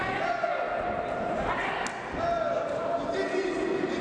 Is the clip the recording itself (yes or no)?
yes